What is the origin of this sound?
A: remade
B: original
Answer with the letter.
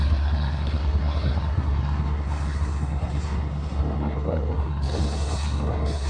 A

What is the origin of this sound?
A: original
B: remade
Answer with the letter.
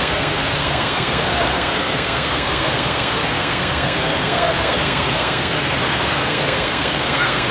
B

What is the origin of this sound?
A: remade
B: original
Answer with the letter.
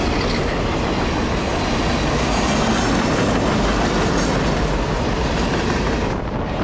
B